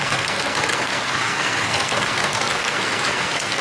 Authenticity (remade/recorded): remade